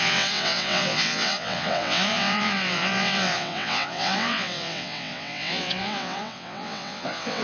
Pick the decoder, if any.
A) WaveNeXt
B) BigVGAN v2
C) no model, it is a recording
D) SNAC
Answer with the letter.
A